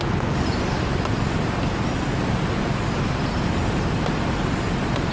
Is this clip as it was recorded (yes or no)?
yes